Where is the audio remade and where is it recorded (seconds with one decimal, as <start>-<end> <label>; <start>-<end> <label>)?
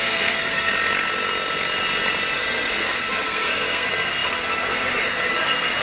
0.0-0.7 remade; 0.7-2.3 recorded; 2.3-5.8 remade